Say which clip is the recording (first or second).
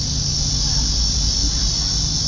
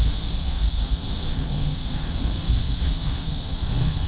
first